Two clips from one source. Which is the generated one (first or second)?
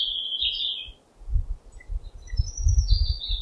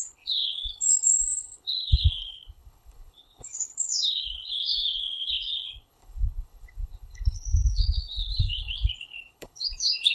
second